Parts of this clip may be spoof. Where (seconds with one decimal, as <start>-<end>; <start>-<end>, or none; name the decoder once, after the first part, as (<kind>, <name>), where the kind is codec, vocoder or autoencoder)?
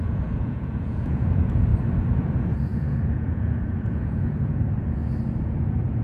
0.0-1.7 (vocoder, Vocos); 2.2-5.0; 5.6-6.0